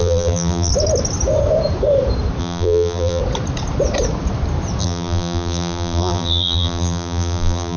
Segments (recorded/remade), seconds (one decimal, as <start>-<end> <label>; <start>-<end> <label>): 0.0-0.7 remade; 0.7-2.4 recorded; 2.4-3.2 remade; 3.2-4.8 recorded; 4.8-7.8 remade

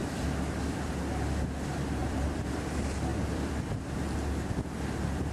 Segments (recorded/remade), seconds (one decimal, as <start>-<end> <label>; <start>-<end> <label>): 0.0-0.9 remade; 0.9-2.0 recorded; 2.0-2.5 remade; 2.5-3.1 recorded; 3.1-3.6 remade; 3.6-5.3 recorded

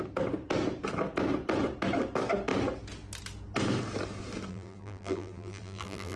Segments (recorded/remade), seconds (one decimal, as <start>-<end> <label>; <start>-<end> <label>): 0.0-4.5 recorded; 4.5-6.2 remade

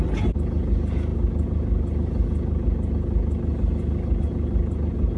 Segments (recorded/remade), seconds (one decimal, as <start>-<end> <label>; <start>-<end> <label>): 0.0-5.2 recorded

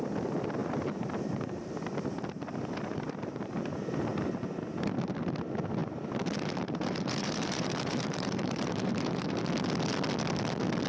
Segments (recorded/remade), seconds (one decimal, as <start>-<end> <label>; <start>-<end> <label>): 0.0-0.6 recorded; 0.6-3.6 remade; 3.6-5.8 recorded; 5.8-9.4 remade; 9.4-10.9 recorded

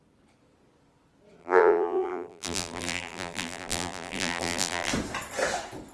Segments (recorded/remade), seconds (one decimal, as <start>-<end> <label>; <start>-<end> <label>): 0.0-1.4 recorded; 1.4-4.9 remade; 4.9-5.9 recorded

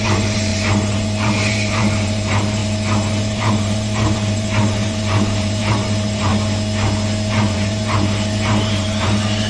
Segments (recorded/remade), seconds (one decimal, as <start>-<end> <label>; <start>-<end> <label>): 0.0-2.6 remade; 2.6-3.2 recorded; 3.2-6.3 remade; 6.3-7.3 recorded; 7.3-9.5 remade